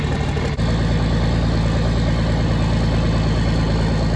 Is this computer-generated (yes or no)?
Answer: no